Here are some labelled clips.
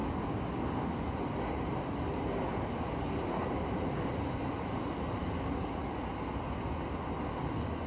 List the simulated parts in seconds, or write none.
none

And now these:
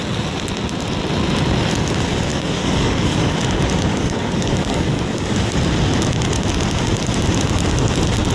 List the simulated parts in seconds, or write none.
2.3-3.3 (codec, DAC); 3.9-5.6

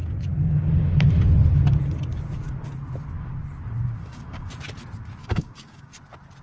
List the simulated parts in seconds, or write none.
4.0-4.5 (codec, DAC); 5.2-5.9

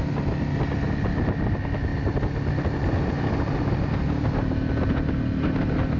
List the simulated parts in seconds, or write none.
none

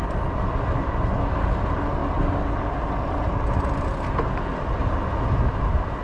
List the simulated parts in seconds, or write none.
none

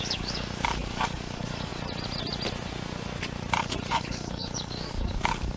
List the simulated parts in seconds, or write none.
0.0-1.7 (codec, DAC); 3.9-5.6

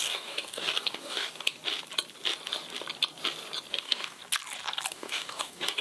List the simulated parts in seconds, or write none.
0.0-1.6 (codec, DAC); 3.7-4.2; 4.9-5.8

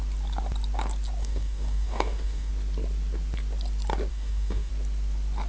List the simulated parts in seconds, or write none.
1.2-2.5 (codec, DAC); 4.1-4.7